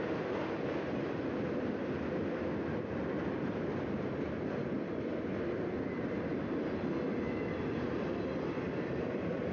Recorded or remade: recorded